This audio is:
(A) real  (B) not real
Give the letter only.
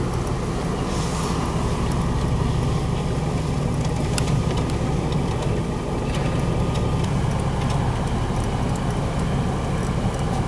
A